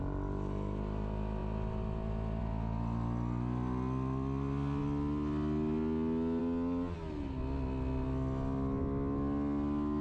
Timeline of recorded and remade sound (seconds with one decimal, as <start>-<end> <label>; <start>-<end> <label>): 0.0-10.0 recorded